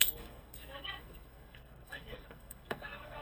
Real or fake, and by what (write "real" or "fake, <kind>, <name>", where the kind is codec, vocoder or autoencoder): fake, codec, SNAC